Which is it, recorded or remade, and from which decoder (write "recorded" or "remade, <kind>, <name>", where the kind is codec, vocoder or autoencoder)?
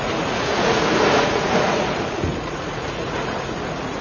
remade, vocoder, Vocos